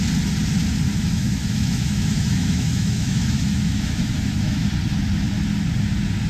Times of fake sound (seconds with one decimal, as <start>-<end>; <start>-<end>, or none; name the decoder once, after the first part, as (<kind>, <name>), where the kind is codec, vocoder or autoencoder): 0.9-4.7 (autoencoder, DAC-VAE)